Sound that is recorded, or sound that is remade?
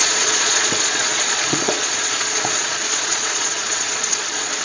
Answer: remade